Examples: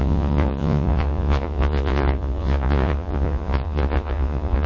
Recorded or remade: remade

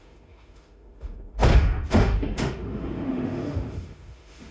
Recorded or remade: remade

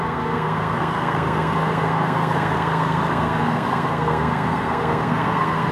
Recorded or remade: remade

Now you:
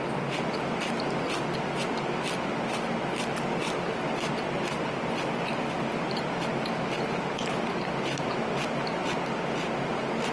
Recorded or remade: recorded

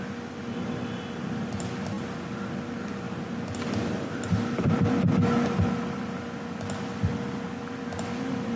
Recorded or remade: recorded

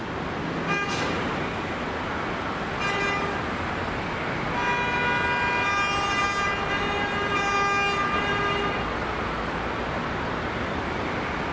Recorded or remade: recorded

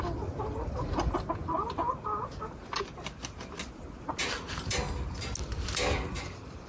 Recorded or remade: recorded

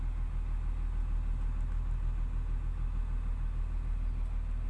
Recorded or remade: recorded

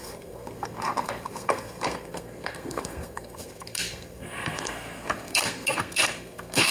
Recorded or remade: remade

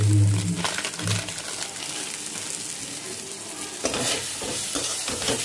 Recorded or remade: recorded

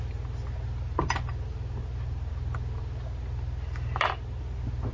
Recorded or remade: recorded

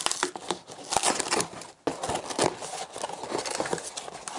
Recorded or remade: recorded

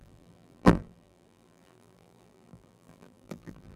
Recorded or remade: remade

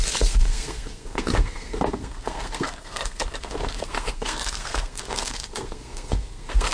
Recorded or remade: remade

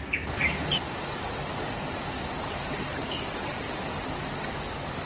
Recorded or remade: recorded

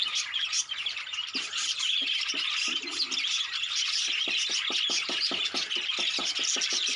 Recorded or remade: recorded